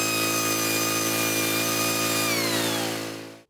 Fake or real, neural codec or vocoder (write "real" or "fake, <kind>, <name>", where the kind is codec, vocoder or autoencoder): real